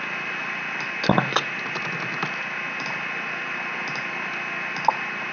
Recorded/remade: recorded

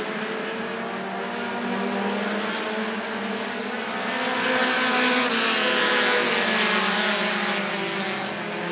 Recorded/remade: recorded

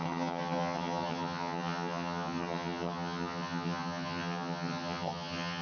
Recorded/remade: remade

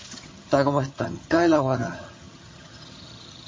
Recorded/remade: remade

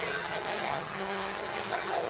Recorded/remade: remade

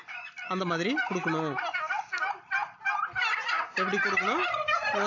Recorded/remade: recorded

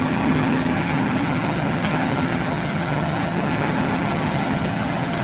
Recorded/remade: remade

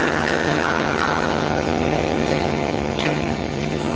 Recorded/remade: remade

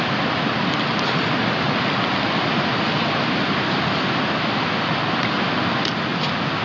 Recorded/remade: recorded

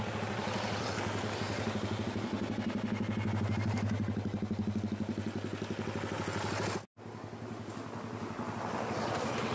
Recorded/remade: recorded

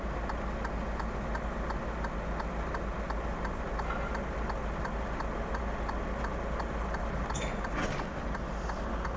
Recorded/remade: recorded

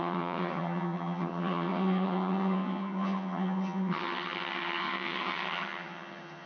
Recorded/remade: remade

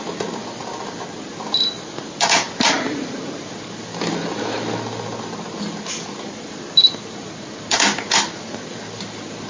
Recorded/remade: recorded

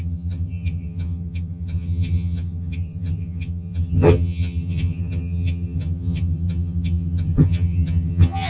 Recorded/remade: remade